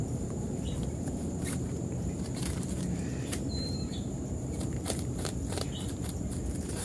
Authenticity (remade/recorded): remade